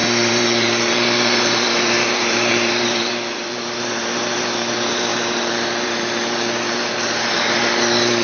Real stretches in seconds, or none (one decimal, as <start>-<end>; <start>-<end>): none